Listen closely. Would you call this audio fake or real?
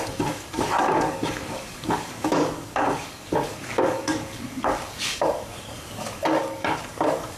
fake